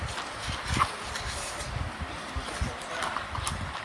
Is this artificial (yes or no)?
no